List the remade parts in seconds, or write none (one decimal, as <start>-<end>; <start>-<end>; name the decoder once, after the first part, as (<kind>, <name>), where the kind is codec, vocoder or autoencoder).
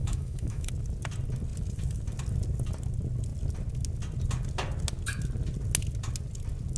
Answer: 0.0-0.7 (autoencoder, DAC-VAE)